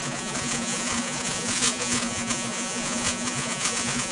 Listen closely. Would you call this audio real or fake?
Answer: fake